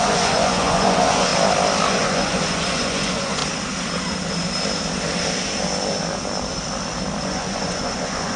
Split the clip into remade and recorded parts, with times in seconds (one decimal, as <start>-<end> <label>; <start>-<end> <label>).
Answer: 0.0-1.3 remade; 1.3-1.9 recorded; 1.9-3.4 remade; 3.4-7.2 recorded; 7.2-8.4 remade